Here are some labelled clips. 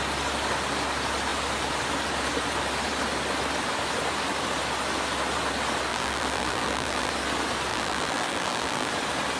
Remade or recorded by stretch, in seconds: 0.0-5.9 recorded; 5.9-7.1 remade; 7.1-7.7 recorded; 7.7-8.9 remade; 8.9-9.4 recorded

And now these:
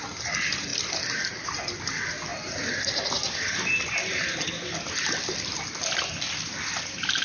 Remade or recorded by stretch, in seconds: 0.0-2.3 recorded; 2.3-6.5 remade; 6.5-7.2 recorded